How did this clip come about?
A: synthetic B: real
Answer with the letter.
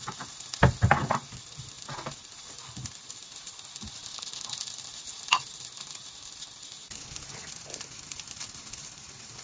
A